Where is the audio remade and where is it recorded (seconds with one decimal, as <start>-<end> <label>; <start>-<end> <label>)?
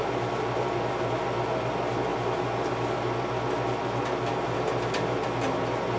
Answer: 0.0-6.0 recorded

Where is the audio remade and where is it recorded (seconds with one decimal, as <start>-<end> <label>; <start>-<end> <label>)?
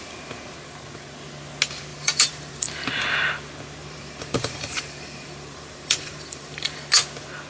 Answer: 0.0-1.9 recorded; 1.9-2.9 remade; 2.9-3.8 recorded; 3.8-6.8 remade; 6.8-7.5 recorded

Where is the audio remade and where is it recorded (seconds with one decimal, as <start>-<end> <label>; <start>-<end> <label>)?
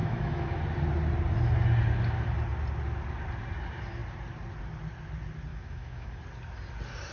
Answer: 0.0-0.6 remade; 0.6-5.5 recorded; 5.5-6.2 remade; 6.2-7.1 recorded